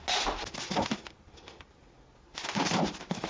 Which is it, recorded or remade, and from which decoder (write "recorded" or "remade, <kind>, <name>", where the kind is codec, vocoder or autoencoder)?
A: recorded